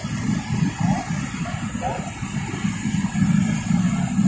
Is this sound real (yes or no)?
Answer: yes